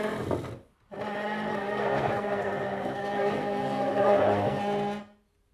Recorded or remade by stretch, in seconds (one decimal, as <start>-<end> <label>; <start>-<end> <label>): 0.0-1.5 recorded; 1.5-4.6 remade; 4.6-5.5 recorded

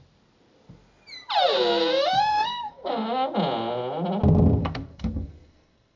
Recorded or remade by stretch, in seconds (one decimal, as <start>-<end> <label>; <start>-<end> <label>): 0.0-2.3 recorded; 2.3-2.9 remade; 2.9-4.6 recorded; 4.6-6.0 remade

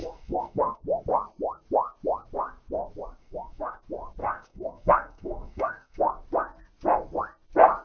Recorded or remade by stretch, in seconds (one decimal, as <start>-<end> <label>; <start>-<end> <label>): 0.0-0.8 remade; 0.8-3.2 recorded; 3.2-3.8 remade; 3.8-4.2 recorded; 4.2-6.1 remade; 6.1-7.8 recorded

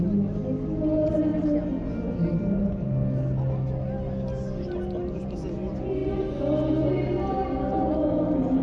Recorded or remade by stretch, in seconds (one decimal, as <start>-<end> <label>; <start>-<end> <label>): 0.0-8.6 recorded

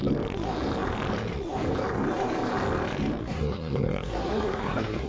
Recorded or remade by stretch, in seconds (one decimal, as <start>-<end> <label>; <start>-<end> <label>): 0.0-3.2 recorded; 3.2-5.1 remade

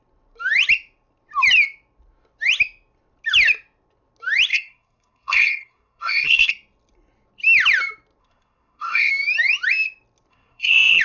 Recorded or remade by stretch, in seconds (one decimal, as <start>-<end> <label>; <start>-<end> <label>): 0.0-4.5 recorded; 4.5-6.5 remade; 6.5-8.2 recorded; 8.2-9.1 remade; 9.1-10.3 recorded; 10.3-11.0 remade